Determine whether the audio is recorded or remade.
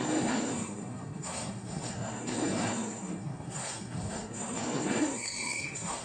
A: remade